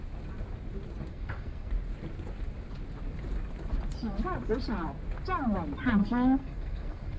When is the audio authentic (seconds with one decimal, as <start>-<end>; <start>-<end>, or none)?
0.0-1.1; 1.7-6.0